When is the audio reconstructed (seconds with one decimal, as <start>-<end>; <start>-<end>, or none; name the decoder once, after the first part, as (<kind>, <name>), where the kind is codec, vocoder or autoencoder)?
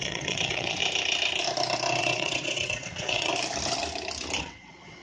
0.0-0.8 (vocoder, WaveNeXt); 2.0-3.3; 4.4-5.0